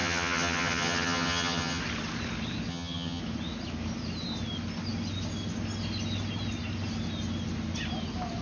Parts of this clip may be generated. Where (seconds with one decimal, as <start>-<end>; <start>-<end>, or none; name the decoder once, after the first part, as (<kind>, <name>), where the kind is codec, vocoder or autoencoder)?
0.0-1.8 (vocoder, HiFi-GAN); 2.7-3.2